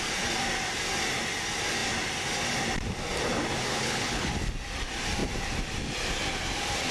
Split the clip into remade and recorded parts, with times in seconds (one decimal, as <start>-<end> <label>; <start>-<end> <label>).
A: 0.0-3.7 recorded; 3.7-4.3 remade; 4.3-6.9 recorded